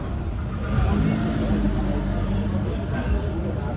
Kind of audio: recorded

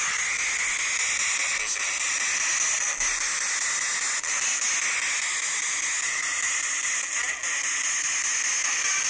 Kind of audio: recorded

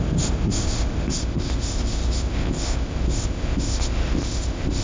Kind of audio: remade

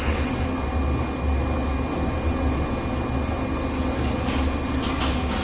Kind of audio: recorded